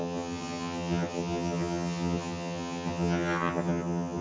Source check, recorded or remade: remade